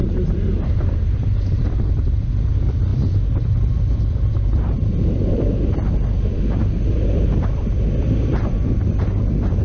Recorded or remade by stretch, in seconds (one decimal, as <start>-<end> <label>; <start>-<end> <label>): 0.0-9.6 remade